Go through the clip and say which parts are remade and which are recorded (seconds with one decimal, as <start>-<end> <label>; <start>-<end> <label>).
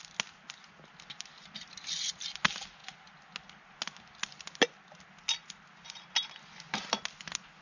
0.0-7.6 recorded